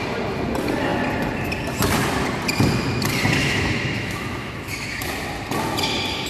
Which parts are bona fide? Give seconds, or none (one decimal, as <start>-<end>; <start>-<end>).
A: 0.0-3.4; 5.1-6.3